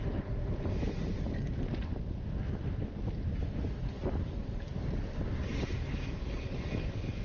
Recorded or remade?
recorded